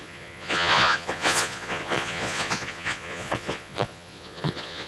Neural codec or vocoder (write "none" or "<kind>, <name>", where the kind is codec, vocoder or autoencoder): vocoder, Vocos